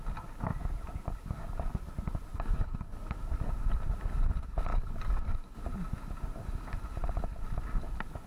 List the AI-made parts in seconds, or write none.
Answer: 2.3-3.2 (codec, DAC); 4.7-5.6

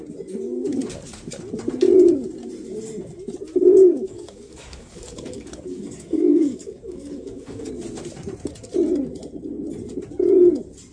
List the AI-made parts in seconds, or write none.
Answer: 3.8-7.7 (codec, DAC)

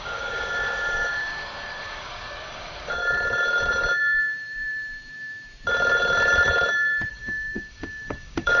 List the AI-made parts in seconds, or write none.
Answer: 0.0-3.0 (codec, DAC); 7.1-8.6

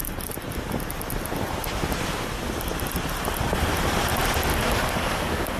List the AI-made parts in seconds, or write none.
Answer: 4.5-5.6 (codec, DAC)

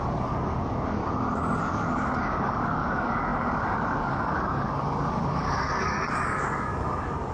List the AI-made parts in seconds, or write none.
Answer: 0.0-1.0 (codec, DAC); 1.6-7.3

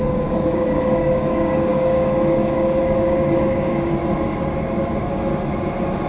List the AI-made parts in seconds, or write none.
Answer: 0.0-4.0 (codec, DAC); 4.6-5.3